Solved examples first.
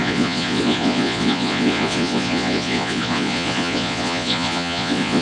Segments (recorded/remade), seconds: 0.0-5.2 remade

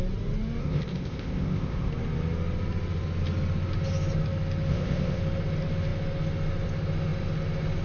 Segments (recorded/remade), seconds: 0.0-0.6 recorded; 0.6-1.9 remade; 1.9-4.7 recorded; 4.7-5.2 remade; 5.2-7.8 recorded

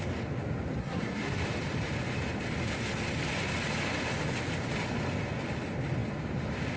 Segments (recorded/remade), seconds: 0.0-0.8 recorded; 0.8-1.4 remade; 1.4-6.8 recorded

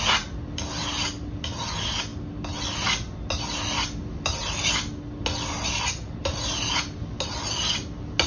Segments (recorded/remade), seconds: 0.0-8.3 recorded